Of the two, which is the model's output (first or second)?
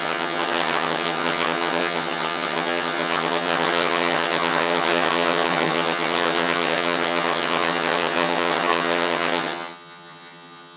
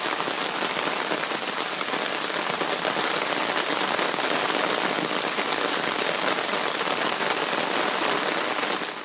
first